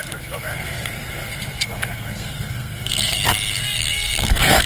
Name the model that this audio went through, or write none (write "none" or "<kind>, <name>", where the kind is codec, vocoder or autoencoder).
codec, SNAC